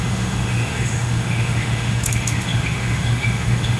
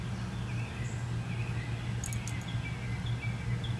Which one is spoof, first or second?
first